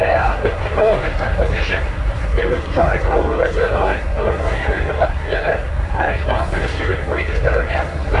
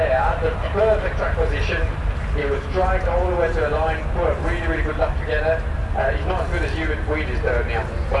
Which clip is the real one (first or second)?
second